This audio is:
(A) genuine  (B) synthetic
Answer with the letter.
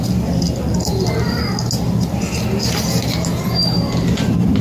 A